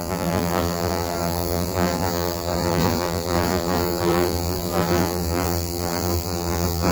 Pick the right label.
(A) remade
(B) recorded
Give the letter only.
A